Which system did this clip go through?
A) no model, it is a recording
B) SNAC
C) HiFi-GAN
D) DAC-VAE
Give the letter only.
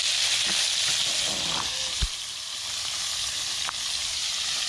A